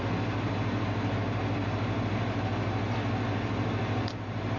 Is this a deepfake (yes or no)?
no